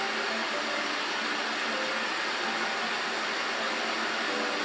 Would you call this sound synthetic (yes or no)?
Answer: no